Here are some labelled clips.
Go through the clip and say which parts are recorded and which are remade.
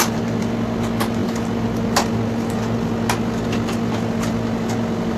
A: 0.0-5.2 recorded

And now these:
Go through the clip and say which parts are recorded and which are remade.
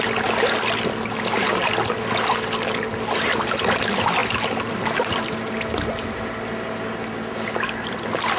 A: 0.0-8.4 recorded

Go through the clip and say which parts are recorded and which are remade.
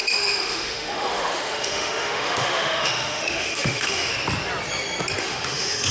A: 0.0-4.1 remade; 4.1-5.2 recorded; 5.2-5.9 remade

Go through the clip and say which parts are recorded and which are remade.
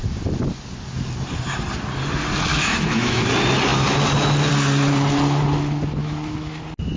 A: 0.0-2.5 recorded; 2.5-3.3 remade; 3.3-6.0 recorded; 6.0-6.6 remade; 6.6-7.0 recorded